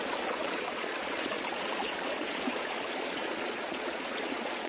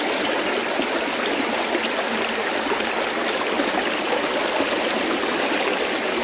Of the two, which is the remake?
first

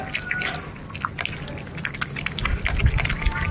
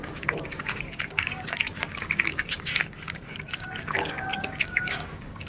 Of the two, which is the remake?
second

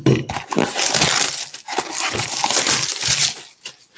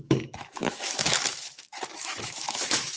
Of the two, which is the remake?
second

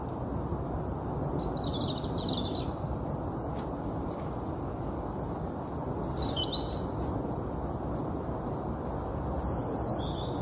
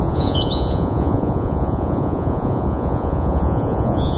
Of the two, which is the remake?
second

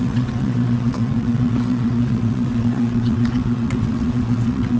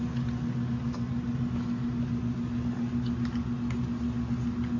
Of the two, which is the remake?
first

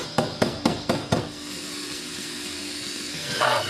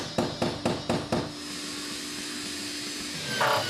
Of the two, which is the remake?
first